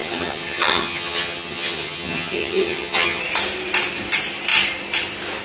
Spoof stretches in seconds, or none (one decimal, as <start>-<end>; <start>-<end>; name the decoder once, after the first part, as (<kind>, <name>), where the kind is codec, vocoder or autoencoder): 0.0-3.2 (vocoder, HiFi-GAN)